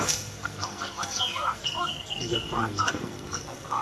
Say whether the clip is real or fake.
fake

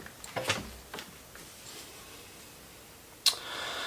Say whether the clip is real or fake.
real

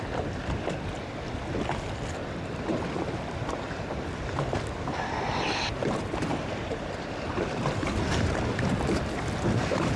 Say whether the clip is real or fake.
real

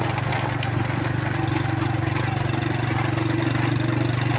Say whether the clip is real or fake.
real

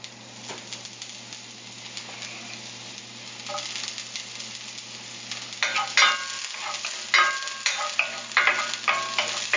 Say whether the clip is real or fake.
real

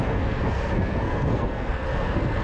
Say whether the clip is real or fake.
fake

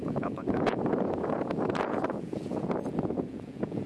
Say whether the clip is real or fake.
fake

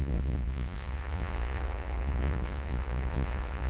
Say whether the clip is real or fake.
fake